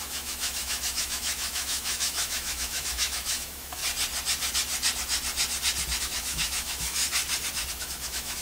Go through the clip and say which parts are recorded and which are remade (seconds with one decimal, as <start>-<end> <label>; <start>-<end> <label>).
0.0-3.8 remade; 3.8-6.0 recorded; 6.0-7.0 remade; 7.0-7.8 recorded; 7.8-8.4 remade